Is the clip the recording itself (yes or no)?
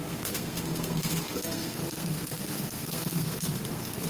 no